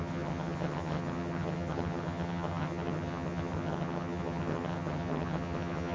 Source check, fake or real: fake